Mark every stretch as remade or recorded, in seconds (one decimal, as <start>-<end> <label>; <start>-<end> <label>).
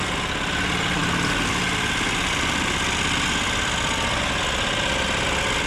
0.0-5.7 recorded